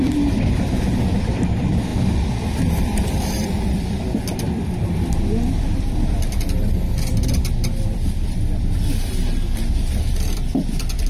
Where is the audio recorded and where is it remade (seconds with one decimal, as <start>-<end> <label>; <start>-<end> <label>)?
0.0-11.1 remade